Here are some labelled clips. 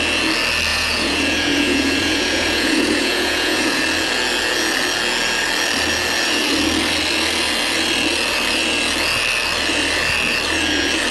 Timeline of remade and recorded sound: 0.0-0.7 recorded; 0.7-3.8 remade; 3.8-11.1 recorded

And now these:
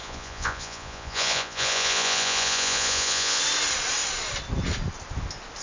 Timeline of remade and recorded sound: 0.0-3.4 remade; 3.4-5.6 recorded